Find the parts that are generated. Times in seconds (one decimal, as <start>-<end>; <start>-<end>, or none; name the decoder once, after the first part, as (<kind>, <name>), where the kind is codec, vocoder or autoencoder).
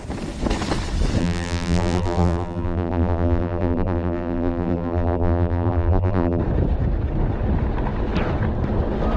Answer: 1.2-6.4 (vocoder, BigVGAN v2)